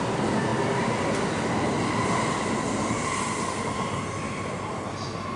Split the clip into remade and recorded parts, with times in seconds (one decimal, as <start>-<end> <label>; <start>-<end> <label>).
0.0-5.4 recorded